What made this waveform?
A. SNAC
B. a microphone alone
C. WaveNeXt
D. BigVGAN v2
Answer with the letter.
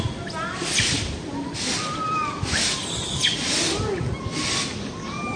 B